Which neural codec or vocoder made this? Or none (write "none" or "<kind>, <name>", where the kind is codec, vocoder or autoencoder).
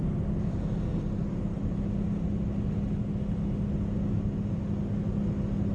none